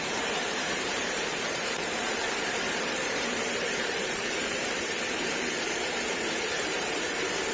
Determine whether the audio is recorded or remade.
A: remade